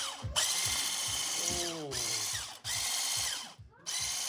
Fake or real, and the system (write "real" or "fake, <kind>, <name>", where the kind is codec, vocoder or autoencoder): fake, vocoder, BigVGAN v2